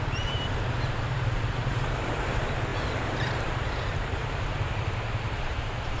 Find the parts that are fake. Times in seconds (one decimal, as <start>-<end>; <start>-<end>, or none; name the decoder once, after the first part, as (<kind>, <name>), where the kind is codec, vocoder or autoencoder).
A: 0.0-4.2 (vocoder, BigVGAN v2); 5.5-6.0